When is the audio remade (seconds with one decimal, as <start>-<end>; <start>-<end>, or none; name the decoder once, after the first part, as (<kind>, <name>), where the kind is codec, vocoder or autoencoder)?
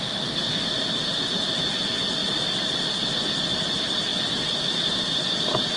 none